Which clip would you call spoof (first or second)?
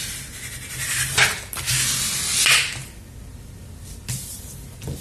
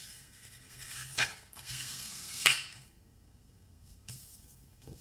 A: second